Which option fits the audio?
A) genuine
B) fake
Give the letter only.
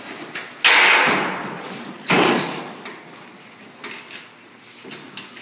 A